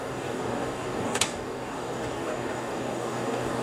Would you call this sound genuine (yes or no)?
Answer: no